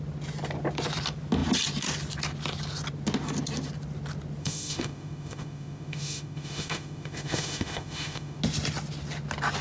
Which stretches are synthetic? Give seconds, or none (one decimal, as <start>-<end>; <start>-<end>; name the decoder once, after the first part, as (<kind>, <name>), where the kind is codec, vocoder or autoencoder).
4.4-8.4 (autoencoder, DAC-VAE)